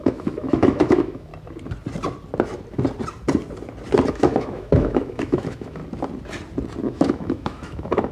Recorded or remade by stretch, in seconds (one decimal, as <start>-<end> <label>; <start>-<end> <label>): 0.0-1.3 remade; 1.3-4.1 recorded; 4.1-5.8 remade; 5.8-6.8 recorded; 6.8-8.1 remade